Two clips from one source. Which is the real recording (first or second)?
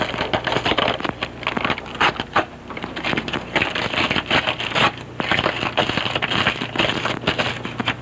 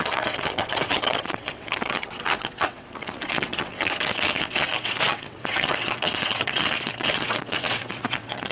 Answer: first